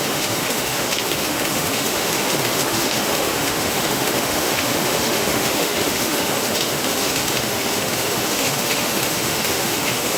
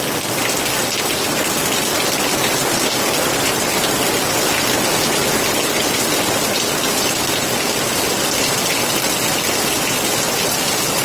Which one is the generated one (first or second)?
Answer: first